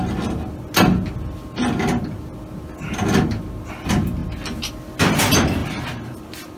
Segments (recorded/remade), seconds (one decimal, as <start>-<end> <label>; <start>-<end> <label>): 0.0-6.6 recorded